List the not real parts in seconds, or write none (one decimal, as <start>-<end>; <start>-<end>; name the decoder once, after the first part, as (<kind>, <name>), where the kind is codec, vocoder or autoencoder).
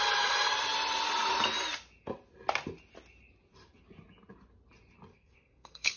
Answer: 5.1-6.0 (codec, SNAC)